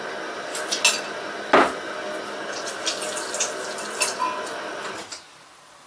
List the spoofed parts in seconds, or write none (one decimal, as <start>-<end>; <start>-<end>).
none